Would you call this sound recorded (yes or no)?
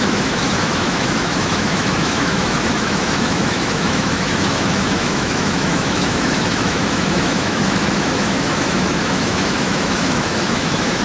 no